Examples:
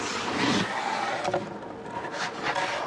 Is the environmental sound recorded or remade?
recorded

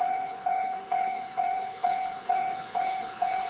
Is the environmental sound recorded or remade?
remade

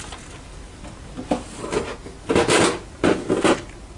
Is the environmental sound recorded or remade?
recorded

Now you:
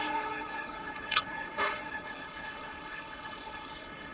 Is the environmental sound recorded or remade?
remade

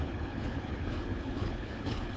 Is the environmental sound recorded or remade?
remade